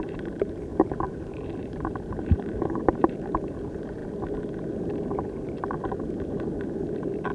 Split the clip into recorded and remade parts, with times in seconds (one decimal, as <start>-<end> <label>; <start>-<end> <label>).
0.0-4.0 remade; 4.0-6.6 recorded; 6.6-7.3 remade